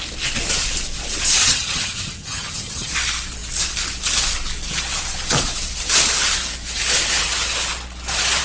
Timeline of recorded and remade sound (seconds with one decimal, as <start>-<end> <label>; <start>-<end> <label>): 0.0-1.4 recorded; 1.4-2.9 remade; 2.9-8.4 recorded

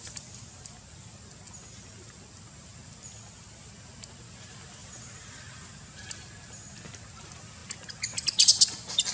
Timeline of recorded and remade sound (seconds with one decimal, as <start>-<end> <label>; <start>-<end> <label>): 0.0-4.8 recorded; 4.8-6.1 remade; 6.1-9.1 recorded

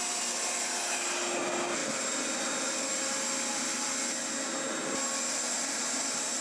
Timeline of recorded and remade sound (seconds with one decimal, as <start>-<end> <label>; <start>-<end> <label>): 0.0-6.4 recorded

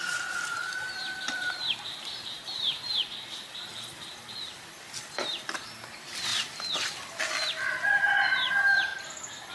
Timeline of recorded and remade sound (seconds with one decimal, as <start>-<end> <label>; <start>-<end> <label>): 0.0-6.3 remade; 6.3-8.0 recorded; 8.0-9.5 remade

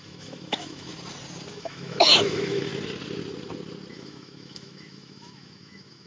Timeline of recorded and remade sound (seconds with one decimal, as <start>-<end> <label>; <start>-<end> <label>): 0.0-0.9 remade; 0.9-1.5 recorded; 1.5-2.7 remade; 2.7-3.9 recorded; 3.9-6.1 remade